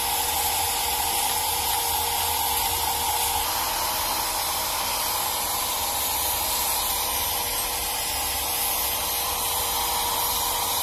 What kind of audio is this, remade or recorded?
recorded